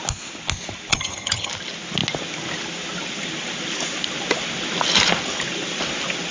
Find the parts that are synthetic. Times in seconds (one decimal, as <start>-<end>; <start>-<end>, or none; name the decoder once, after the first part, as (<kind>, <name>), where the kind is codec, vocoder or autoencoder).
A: 0.9-1.5 (vocoder, HiFi-GAN)